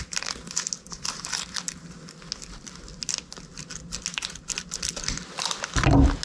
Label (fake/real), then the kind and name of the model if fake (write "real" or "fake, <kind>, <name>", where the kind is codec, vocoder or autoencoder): real